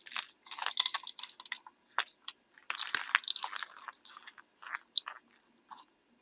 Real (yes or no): yes